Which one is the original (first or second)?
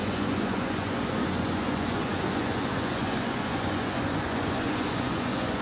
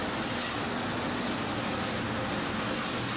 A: second